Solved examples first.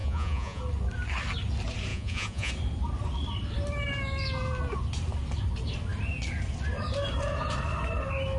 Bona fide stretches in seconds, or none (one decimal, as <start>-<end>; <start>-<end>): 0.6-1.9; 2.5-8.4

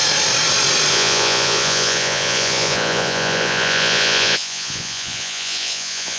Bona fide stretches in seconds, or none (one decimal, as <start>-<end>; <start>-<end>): 0.0-0.9

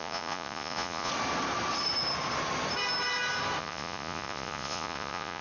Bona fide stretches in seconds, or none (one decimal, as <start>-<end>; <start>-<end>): 1.1-3.6